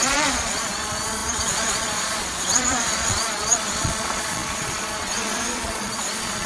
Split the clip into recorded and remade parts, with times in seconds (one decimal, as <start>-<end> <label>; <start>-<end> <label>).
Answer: 0.0-6.5 remade